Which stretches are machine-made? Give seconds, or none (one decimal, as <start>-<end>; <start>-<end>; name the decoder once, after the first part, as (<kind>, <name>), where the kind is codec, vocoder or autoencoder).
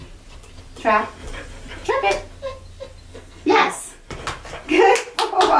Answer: 3.1-3.8 (codec, SNAC)